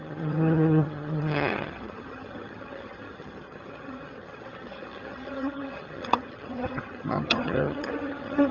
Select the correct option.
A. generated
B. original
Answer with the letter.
A